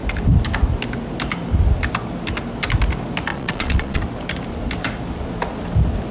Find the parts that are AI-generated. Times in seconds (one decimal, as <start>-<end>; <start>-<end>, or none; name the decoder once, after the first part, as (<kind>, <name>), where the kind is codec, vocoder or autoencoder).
3.3-4.0 (vocoder, Vocos)